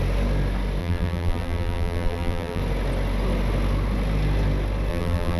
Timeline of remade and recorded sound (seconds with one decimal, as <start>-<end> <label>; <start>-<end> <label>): 0.0-0.8 recorded; 0.8-2.6 remade; 2.6-4.9 recorded; 4.9-5.4 remade